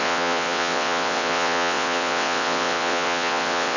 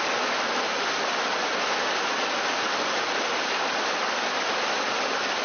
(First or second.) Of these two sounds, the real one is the second